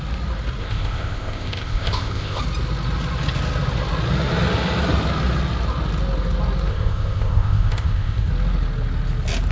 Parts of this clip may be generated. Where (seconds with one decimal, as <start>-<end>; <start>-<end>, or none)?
0.6-2.4; 6.7-8.3